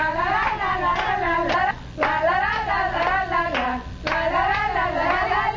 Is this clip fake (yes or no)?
no